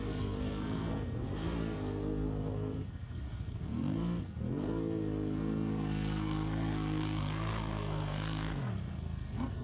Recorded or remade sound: remade